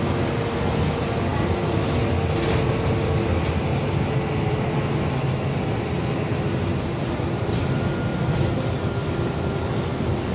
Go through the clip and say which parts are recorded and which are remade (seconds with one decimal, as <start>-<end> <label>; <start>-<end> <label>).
0.0-3.7 recorded; 3.7-6.6 remade; 6.6-8.1 recorded; 8.1-10.3 remade